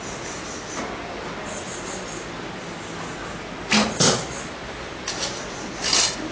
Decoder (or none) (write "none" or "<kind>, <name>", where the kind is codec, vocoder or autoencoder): none